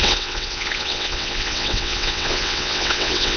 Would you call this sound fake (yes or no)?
yes